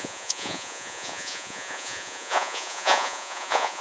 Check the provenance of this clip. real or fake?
fake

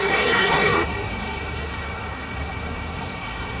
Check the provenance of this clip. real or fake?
fake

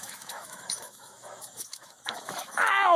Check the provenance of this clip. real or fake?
fake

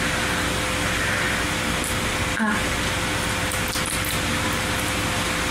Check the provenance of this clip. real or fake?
real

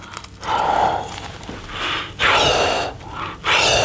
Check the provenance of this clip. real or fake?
real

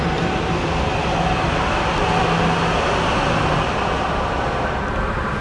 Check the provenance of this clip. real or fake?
real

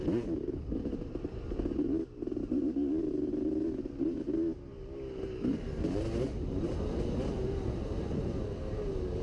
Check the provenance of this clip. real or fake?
real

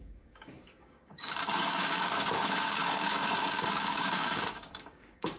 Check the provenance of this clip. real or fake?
fake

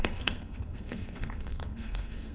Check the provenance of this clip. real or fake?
fake